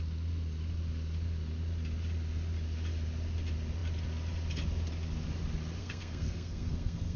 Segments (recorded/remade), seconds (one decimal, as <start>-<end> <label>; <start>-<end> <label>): 0.0-5.8 recorded; 5.8-7.2 remade